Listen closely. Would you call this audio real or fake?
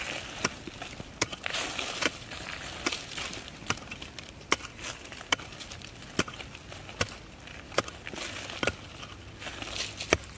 real